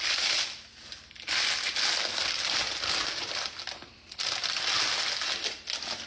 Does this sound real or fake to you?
real